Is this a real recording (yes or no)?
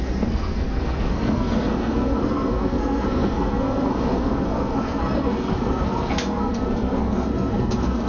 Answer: no